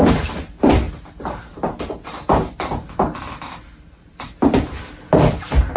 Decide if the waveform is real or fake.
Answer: real